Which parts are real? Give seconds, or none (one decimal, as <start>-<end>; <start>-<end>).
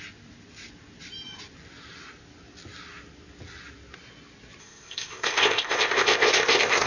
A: 0.0-4.6